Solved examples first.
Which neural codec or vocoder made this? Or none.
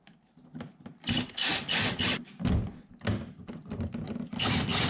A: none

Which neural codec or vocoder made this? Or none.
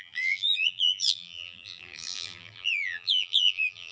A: vocoder, BigVGAN v2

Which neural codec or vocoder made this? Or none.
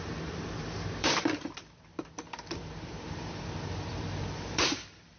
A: vocoder, BigVGAN v2